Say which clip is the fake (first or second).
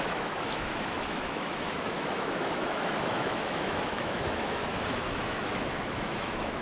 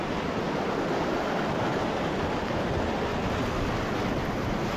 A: first